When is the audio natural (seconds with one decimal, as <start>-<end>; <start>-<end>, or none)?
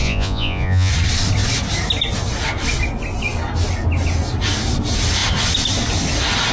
0.9-6.5